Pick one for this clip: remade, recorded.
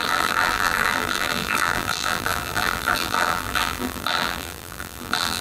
remade